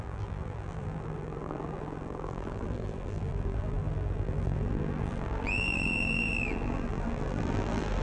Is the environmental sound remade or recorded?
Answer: remade